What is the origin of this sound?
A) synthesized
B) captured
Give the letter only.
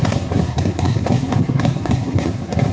A